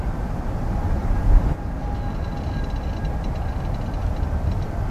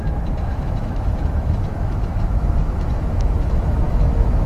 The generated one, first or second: second